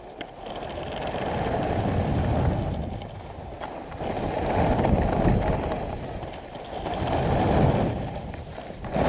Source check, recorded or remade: recorded